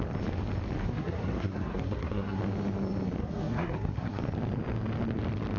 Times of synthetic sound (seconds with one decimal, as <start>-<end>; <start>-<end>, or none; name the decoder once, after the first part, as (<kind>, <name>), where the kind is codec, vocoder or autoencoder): 0.8-2.4 (codec, SNAC); 3.2-4.2

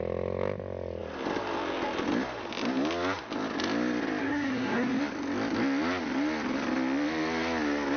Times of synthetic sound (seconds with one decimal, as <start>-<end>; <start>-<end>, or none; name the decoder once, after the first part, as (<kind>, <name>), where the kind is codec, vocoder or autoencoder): 4.2-5.0 (codec, SNAC)

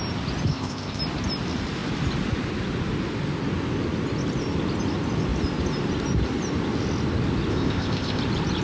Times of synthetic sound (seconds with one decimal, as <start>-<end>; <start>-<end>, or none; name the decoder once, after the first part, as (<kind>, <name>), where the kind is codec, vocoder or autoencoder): 0.5-1.0 (codec, ZipCodec); 7.5-8.2